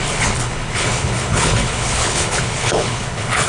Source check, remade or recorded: remade